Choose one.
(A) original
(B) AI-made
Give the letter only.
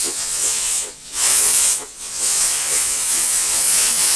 B